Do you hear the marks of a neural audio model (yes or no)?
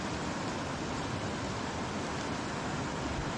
no